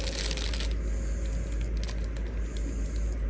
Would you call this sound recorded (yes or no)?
yes